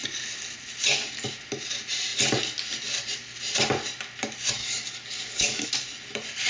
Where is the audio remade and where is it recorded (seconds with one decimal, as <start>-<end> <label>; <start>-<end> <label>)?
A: 0.0-4.6 recorded; 4.6-5.7 remade; 5.7-6.5 recorded